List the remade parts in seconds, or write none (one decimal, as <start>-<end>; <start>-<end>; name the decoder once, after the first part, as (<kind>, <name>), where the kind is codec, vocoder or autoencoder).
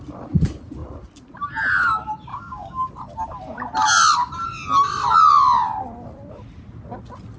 2.3-2.9 (codec, DAC)